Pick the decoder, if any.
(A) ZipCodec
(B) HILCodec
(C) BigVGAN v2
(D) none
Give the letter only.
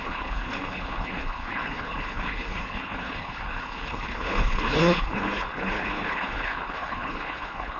B